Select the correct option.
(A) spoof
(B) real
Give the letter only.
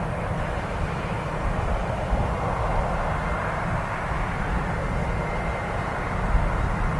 B